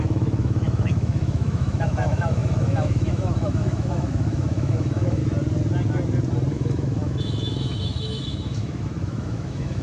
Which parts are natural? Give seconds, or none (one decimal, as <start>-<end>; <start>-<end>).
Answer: 5.2-6.5